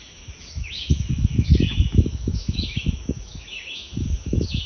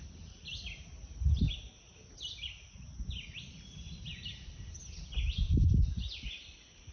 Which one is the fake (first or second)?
first